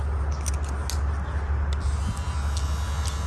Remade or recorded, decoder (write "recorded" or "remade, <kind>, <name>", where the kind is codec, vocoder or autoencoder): recorded